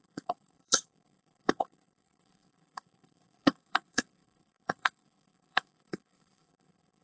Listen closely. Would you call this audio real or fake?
fake